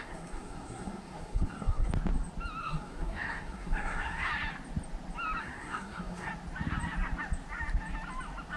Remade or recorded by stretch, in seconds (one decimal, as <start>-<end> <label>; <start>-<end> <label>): 0.0-1.9 remade; 1.9-2.6 recorded; 2.6-4.3 remade; 4.3-5.4 recorded; 5.4-6.3 remade; 6.3-8.6 recorded